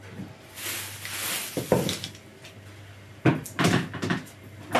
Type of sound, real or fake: real